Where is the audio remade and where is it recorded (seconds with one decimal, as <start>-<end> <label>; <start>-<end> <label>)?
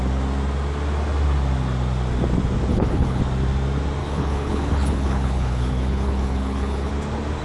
0.0-2.7 recorded; 2.7-3.2 remade; 3.2-4.0 recorded; 4.0-6.9 remade; 6.9-7.4 recorded